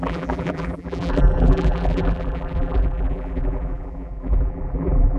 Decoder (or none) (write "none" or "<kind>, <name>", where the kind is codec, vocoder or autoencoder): vocoder, BigVGAN v2